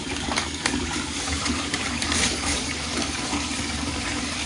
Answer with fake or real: fake